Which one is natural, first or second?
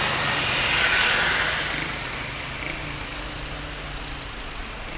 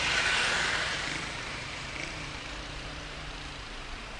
first